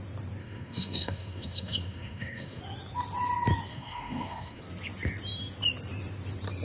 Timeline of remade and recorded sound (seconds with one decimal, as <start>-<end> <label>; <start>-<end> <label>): 0.0-0.4 recorded; 0.4-2.6 remade; 2.6-3.7 recorded; 3.7-4.6 remade; 4.6-6.6 recorded